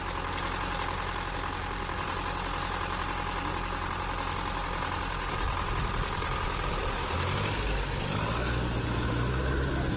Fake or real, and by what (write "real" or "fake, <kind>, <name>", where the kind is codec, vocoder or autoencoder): real